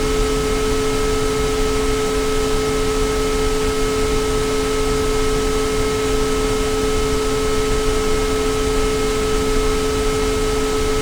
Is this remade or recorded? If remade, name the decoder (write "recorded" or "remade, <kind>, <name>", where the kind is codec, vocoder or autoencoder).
recorded